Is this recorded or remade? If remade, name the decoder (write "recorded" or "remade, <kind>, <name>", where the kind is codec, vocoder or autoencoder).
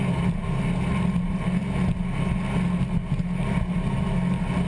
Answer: recorded